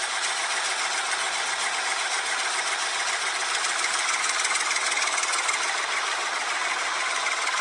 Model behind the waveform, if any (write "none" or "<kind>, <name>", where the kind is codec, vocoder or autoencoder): none